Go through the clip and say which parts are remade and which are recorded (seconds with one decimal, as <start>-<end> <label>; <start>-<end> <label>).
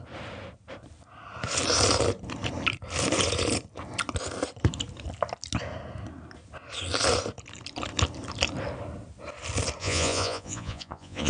0.0-9.8 recorded; 9.8-11.3 remade